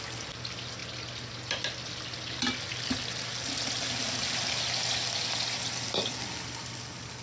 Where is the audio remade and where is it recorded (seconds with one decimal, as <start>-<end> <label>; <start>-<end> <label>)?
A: 0.0-7.2 recorded